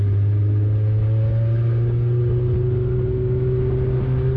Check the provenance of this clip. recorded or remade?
recorded